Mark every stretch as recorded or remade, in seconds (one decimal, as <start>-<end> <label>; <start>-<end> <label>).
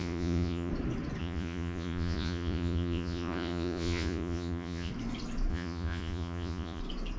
0.0-0.7 remade; 0.7-1.2 recorded; 1.2-4.9 remade; 4.9-5.5 recorded; 5.5-6.8 remade; 6.8-7.2 recorded